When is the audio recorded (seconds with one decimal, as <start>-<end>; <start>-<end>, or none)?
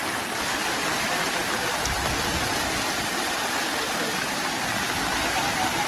0.0-5.9